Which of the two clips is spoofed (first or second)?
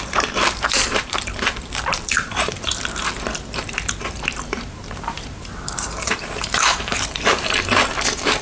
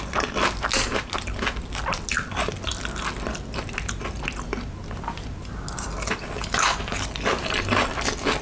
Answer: first